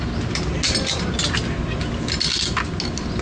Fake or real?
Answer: real